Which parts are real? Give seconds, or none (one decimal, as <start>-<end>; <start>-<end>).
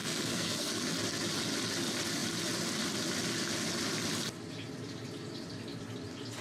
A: 0.8-6.4